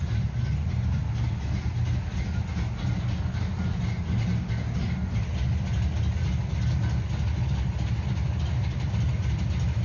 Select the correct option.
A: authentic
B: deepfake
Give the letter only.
A